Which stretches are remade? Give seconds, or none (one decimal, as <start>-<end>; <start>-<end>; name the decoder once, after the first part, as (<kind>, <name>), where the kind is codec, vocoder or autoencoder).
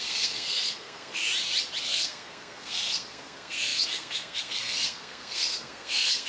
0.0-1.2 (codec, SNAC); 1.8-6.3